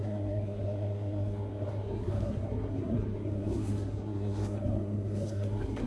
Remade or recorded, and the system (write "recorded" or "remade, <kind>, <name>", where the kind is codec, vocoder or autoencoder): remade, codec, SNAC